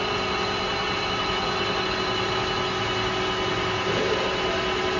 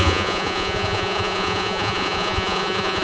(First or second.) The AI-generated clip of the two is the second